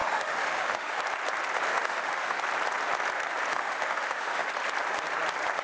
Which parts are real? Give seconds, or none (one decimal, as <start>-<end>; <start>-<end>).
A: 1.0-1.7; 2.4-3.5; 4.5-5.6